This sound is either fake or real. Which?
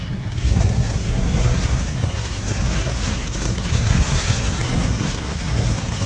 fake